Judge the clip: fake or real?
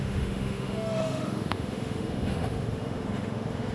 fake